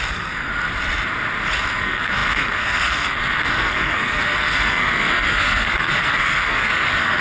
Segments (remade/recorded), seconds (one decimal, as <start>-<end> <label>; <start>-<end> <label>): 0.0-0.5 remade; 0.5-1.8 recorded; 1.8-7.2 remade